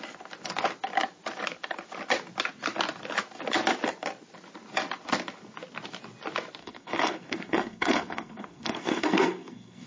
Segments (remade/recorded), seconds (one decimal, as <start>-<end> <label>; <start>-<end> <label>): 0.0-6.6 recorded; 6.6-9.9 remade